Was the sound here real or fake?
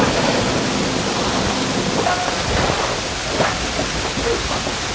real